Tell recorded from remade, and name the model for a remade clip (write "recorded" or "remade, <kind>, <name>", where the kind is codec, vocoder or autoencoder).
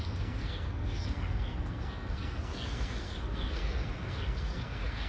remade, codec, SNAC